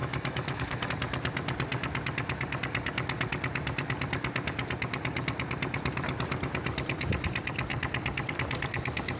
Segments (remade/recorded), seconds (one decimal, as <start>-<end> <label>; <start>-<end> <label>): 0.0-0.9 remade; 0.9-9.2 recorded